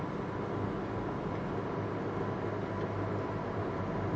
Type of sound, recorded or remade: recorded